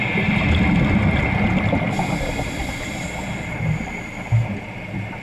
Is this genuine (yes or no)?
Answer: yes